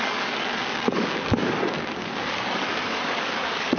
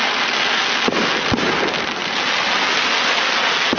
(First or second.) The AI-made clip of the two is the first